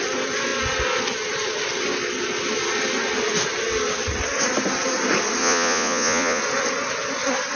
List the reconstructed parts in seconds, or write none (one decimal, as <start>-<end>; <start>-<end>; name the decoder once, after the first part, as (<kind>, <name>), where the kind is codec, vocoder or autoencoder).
5.4-6.4 (vocoder, Vocos)